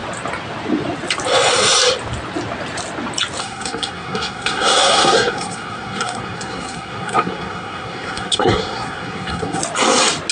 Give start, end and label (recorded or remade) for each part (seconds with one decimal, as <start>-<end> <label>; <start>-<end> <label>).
0.0-3.4 recorded; 3.4-9.6 remade; 9.6-10.3 recorded